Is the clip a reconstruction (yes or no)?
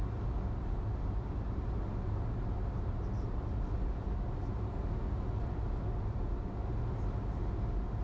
no